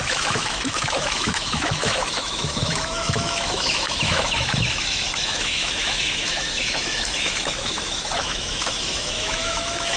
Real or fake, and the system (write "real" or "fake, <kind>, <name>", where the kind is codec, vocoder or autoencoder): fake, autoencoder, DAC-VAE